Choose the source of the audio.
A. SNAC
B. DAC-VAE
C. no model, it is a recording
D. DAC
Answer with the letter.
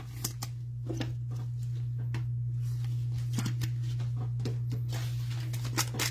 C